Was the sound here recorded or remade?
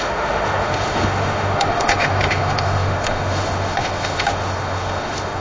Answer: remade